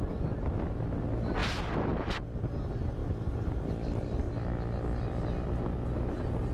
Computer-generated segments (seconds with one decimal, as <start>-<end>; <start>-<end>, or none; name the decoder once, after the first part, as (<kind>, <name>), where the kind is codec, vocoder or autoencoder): none